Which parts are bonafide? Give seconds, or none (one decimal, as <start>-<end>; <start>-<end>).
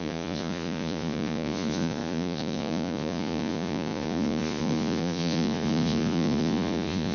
none